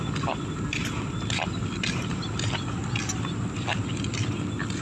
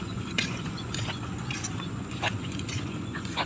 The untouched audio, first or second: first